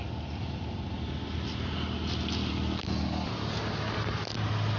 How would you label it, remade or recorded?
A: recorded